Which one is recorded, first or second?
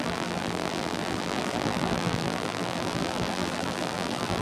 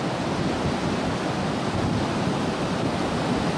second